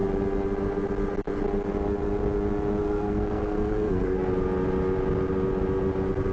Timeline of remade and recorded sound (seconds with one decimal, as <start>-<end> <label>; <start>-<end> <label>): 0.0-2.8 recorded; 2.8-4.2 remade; 4.2-6.3 recorded